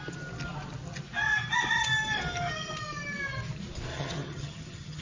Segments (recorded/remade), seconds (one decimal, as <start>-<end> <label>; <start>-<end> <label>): 0.0-3.9 recorded; 3.9-5.0 remade